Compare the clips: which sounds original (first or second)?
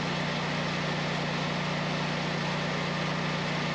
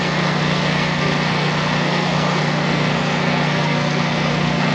first